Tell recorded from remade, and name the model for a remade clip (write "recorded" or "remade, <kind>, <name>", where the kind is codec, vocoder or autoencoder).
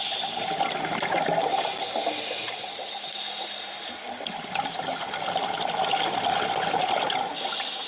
recorded